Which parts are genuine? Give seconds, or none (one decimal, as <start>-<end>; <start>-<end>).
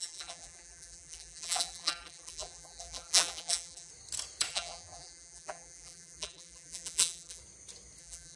3.9-4.5; 7.4-8.0